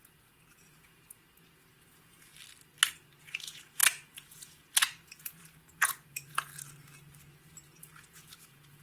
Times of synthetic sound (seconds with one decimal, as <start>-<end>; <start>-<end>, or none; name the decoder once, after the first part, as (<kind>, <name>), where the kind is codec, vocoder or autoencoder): 0.0-2.3 (vocoder, Vocos); 3.2-6.5; 7.8-8.8

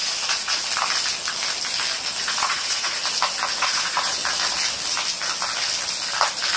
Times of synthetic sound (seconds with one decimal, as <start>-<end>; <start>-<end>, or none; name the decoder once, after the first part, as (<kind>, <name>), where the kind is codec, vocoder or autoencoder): 0.0-0.6 (vocoder, Vocos); 2.2-3.0; 3.6-4.2